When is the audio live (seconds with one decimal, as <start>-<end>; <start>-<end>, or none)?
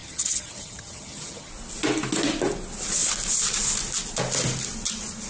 1.5-5.3